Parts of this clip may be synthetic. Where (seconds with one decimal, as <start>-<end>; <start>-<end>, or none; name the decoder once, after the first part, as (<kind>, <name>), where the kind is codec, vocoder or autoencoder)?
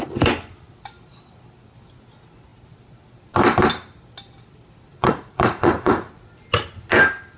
4.9-6.1 (vocoder, Vocos)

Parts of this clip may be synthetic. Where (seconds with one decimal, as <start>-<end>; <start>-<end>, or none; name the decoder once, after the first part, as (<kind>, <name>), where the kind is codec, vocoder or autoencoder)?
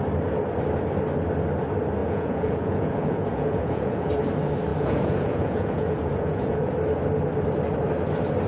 2.0-4.1 (vocoder, Vocos); 4.7-6.7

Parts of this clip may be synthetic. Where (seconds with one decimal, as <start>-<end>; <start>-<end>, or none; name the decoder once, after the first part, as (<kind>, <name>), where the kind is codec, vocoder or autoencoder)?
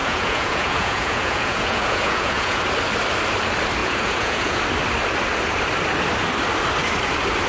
0.0-2.6 (vocoder, Vocos); 3.8-4.6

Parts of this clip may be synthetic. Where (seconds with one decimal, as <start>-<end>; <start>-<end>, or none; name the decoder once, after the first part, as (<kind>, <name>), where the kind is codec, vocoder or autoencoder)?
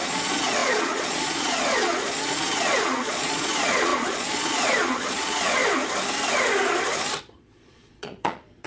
0.0-5.6 (vocoder, Vocos); 7.2-8.7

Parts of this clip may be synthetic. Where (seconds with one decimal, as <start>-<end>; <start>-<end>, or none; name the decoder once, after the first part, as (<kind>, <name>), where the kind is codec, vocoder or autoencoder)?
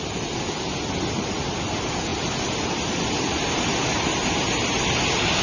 none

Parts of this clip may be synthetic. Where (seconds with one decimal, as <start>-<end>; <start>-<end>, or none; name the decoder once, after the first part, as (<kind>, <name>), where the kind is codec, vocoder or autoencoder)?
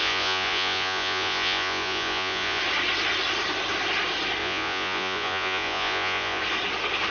0.0-2.6 (vocoder, Vocos); 4.4-6.4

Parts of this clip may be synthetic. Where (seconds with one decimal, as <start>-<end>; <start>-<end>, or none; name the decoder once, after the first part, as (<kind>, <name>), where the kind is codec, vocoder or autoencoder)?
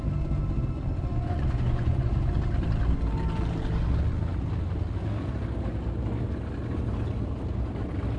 1.1-2.1 (vocoder, Vocos)